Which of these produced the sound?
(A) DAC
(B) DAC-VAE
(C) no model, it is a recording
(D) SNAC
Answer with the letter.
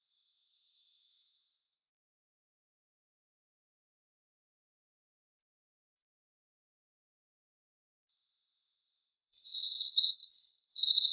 B